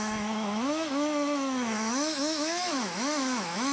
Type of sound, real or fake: fake